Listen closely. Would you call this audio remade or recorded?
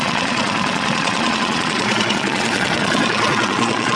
remade